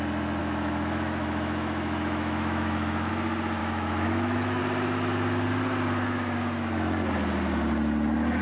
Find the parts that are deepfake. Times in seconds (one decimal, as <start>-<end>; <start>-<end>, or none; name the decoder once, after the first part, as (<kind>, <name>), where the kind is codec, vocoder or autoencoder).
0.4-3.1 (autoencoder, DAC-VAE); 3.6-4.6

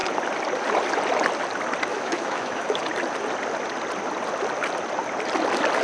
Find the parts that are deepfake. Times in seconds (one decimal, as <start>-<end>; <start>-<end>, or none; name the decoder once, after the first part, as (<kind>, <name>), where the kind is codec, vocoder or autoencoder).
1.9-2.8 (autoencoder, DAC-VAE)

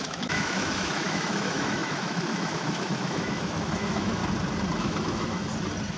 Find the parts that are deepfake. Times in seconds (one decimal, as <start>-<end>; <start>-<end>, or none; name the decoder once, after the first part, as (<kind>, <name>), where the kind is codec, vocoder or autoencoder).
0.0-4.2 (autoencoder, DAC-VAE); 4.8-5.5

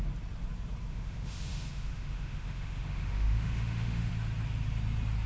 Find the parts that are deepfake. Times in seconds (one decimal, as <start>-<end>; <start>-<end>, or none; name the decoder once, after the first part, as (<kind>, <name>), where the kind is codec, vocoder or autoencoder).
0.9-4.1 (autoencoder, DAC-VAE)

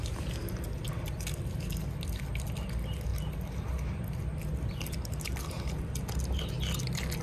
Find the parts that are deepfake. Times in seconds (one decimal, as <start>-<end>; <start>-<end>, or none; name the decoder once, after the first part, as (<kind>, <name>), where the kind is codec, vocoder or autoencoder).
none